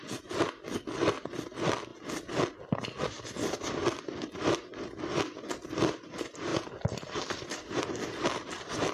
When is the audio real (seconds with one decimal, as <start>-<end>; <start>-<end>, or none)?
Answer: 1.9-6.1